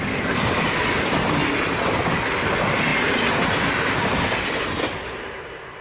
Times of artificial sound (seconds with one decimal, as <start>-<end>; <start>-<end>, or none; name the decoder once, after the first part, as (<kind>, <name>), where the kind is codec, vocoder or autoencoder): none